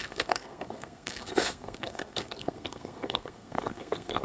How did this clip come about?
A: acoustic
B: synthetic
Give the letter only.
B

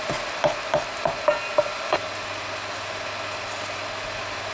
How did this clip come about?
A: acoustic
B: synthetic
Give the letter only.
A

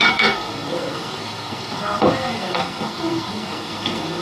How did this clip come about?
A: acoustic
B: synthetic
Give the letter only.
B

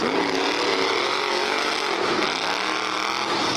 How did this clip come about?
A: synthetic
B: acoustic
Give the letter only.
B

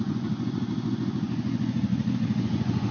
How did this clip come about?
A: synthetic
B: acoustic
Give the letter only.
A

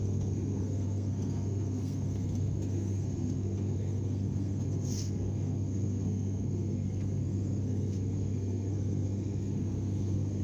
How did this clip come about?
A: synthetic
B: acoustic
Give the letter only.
A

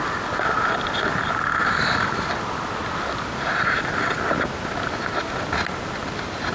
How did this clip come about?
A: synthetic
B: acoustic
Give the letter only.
B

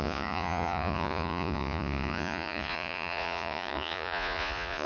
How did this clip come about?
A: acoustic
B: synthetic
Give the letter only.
B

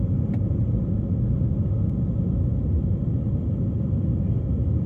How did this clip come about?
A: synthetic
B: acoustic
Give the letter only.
B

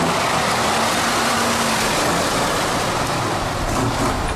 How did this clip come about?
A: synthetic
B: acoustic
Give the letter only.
B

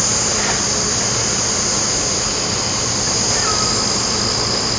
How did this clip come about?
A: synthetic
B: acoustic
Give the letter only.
B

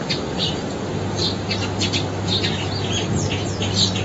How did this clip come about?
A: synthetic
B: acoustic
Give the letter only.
B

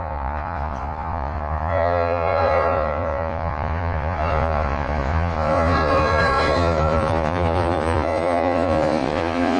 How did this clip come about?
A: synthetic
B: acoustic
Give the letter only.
A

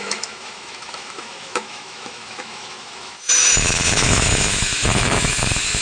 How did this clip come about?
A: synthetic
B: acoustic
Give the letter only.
A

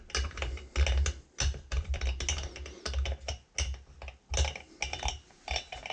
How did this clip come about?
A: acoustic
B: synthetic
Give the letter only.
A